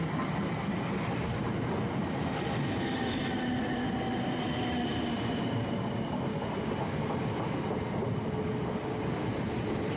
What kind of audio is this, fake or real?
real